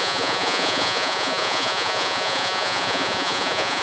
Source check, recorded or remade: remade